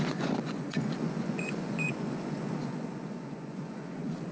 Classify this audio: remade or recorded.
remade